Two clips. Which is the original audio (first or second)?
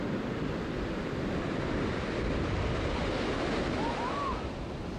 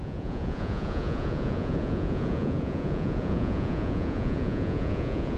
first